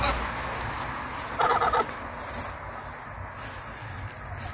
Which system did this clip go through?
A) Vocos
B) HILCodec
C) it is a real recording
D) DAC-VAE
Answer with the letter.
C